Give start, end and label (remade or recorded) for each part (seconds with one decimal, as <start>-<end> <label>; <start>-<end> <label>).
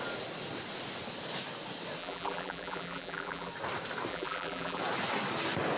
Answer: 0.0-2.0 recorded; 2.0-3.5 remade; 3.5-4.1 recorded; 4.1-4.8 remade; 4.8-5.8 recorded